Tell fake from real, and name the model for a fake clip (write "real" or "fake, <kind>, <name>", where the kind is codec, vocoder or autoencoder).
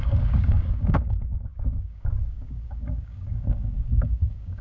fake, codec, DAC